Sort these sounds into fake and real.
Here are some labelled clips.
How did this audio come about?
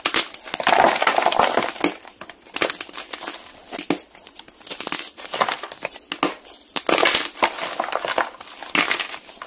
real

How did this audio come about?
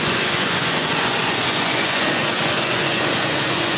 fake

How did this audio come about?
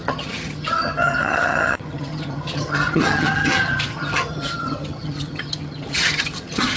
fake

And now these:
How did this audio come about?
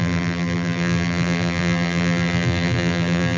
fake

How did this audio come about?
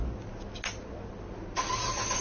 real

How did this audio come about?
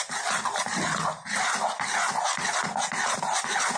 real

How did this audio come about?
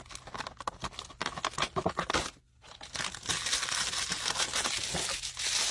real